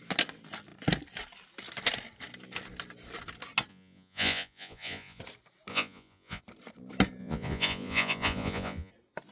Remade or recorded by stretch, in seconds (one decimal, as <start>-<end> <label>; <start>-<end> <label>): 0.0-3.7 recorded; 3.7-5.2 remade; 5.2-5.7 recorded; 5.7-6.4 remade; 6.4-7.2 recorded; 7.2-8.9 remade; 8.9-9.3 recorded